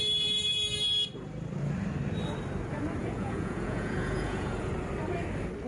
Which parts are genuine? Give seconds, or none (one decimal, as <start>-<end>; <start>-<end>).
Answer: 0.0-3.0; 4.7-5.7